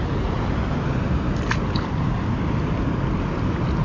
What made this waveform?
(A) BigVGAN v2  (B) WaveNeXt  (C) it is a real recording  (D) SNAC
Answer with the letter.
C